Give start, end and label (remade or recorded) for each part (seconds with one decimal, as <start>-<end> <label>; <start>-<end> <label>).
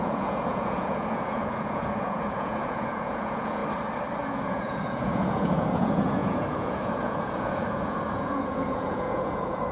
0.0-3.6 remade; 3.6-4.2 recorded; 4.2-9.7 remade